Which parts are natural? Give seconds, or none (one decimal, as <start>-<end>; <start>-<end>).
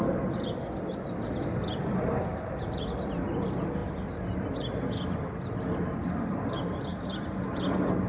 2.8-6.9; 7.6-8.1